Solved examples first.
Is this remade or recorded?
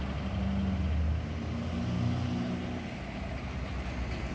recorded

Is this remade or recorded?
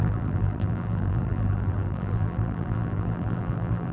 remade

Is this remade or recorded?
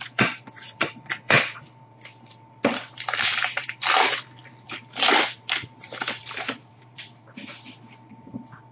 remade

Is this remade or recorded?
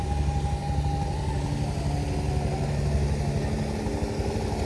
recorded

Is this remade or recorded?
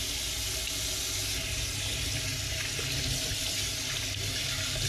recorded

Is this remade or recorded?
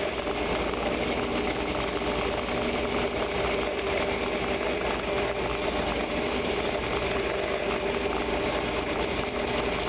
recorded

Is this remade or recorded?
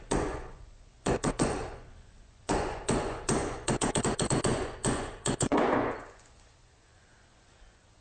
remade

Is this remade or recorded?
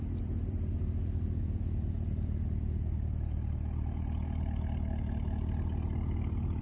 recorded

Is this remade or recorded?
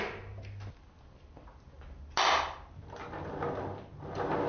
recorded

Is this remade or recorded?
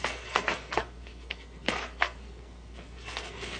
remade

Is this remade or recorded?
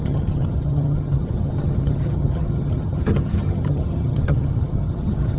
remade